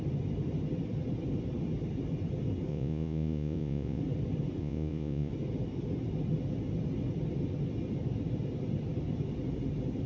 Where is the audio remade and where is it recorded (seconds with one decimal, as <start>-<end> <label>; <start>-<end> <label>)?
0.0-2.7 recorded; 2.7-4.0 remade; 4.0-4.6 recorded; 4.6-5.3 remade; 5.3-10.1 recorded